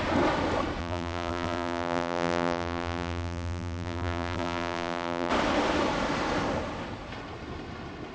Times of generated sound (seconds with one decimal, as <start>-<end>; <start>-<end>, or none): 0.8-5.3